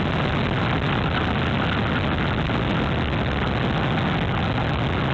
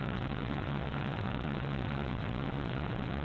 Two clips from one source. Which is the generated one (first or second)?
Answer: second